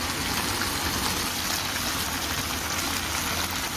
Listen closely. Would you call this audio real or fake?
real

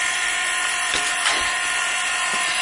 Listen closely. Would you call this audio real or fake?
fake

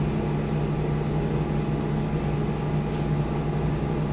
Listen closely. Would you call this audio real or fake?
real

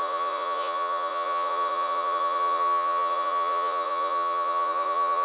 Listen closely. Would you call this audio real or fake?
fake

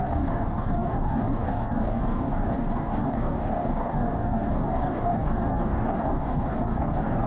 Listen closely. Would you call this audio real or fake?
fake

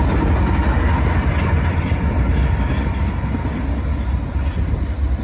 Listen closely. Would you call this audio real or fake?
real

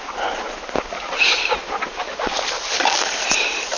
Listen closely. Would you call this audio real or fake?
real